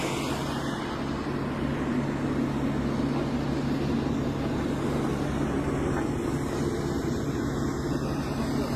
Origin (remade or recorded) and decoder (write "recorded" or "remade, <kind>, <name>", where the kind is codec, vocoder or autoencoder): recorded